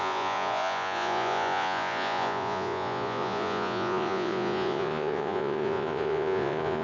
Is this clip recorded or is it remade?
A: remade